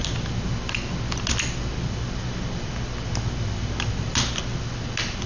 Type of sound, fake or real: real